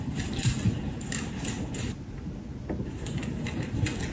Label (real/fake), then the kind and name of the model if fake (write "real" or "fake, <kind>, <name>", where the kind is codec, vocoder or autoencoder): real